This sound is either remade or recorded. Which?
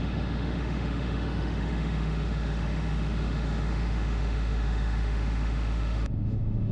remade